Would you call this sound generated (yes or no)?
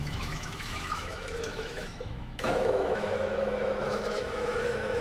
yes